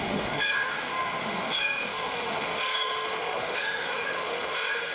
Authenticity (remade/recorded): remade